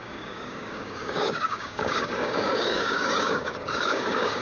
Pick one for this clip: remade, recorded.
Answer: remade